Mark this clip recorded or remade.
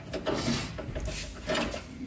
recorded